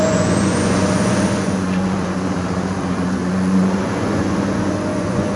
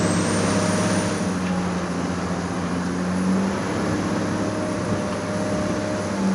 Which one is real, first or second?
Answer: second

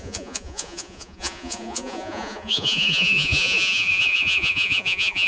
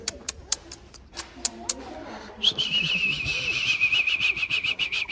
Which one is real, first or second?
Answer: second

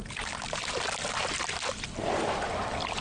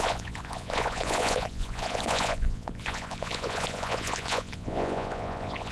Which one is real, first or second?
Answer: first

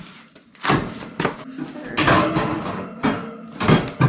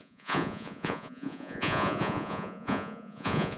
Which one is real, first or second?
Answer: first